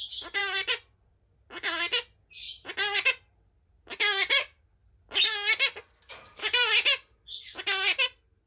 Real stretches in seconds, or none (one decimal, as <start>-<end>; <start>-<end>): 0.0-8.5